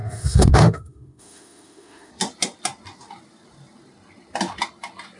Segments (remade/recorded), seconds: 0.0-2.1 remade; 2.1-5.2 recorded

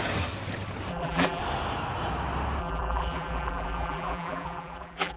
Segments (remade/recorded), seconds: 0.0-0.9 recorded; 0.9-1.4 remade; 1.4-2.6 recorded; 2.6-5.2 remade

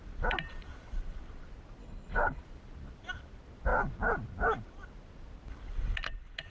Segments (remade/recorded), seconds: 0.0-1.8 recorded; 1.8-2.4 remade; 2.4-6.5 recorded

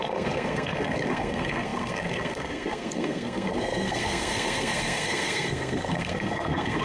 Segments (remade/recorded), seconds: 0.0-6.8 remade

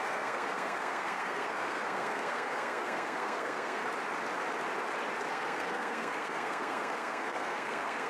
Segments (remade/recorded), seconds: 0.0-3.8 remade; 3.8-5.3 recorded; 5.3-8.1 remade

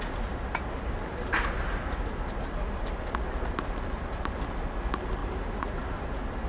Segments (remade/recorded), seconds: 0.0-5.2 recorded; 5.2-6.0 remade; 6.0-6.5 recorded